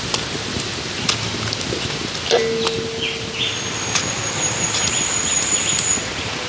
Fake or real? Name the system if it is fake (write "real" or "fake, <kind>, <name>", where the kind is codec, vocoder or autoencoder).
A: real